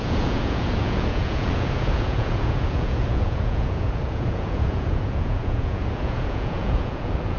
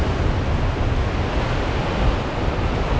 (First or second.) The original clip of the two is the second